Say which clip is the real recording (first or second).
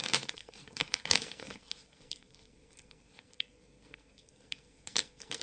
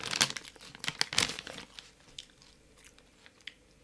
second